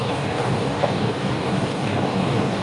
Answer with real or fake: fake